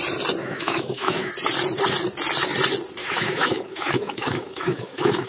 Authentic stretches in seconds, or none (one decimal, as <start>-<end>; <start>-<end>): 0.0-0.4; 1.3-3.0